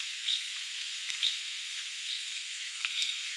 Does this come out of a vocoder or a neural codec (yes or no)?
yes